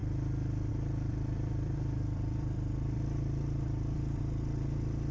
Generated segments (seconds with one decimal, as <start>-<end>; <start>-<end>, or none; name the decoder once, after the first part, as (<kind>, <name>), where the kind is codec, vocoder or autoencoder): 1.1-4.2 (vocoder, BigVGAN v2)